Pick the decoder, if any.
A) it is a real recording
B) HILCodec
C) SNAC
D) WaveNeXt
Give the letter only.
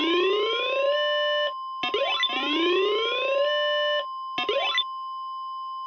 A